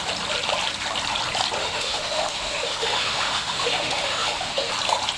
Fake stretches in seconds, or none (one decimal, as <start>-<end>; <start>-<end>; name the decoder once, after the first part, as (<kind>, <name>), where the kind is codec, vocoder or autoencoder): 1.6-4.7 (autoencoder, DAC-VAE)